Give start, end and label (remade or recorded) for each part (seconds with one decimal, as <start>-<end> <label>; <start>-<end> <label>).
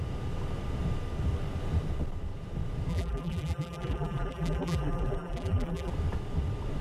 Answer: 0.0-2.9 recorded; 2.9-5.9 remade; 5.9-6.8 recorded